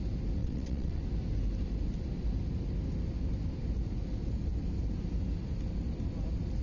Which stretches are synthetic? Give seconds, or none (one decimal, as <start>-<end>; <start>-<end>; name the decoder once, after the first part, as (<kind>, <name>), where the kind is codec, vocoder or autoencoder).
0.4-1.0 (vocoder, WaveNeXt)